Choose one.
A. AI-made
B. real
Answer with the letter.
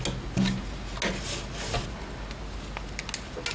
B